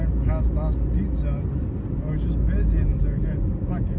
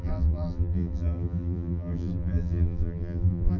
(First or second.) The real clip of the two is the first